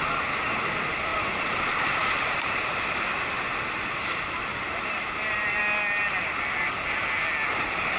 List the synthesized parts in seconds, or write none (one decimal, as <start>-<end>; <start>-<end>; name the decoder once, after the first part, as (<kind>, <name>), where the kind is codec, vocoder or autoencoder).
1.1-2.5 (vocoder, BigVGAN v2); 4.5-5.6